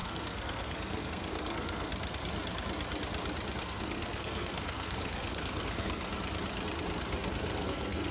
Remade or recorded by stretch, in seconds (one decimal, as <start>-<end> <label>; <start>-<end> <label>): 0.0-1.9 remade; 1.9-3.6 recorded; 3.6-6.1 remade; 6.1-7.4 recorded; 7.4-8.1 remade